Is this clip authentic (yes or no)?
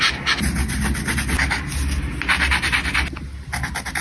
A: yes